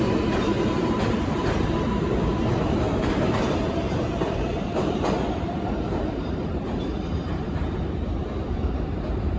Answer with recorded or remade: remade